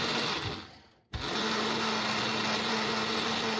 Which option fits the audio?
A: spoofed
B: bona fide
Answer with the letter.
B